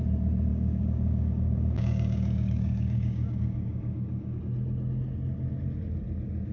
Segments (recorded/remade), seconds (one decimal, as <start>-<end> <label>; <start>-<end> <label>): 0.0-0.5 recorded; 0.5-4.4 remade; 4.4-6.5 recorded